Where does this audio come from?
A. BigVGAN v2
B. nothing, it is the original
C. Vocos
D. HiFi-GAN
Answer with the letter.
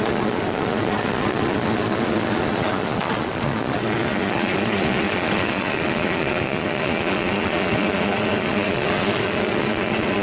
C